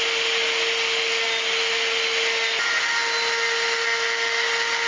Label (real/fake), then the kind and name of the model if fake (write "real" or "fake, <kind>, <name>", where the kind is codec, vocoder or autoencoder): real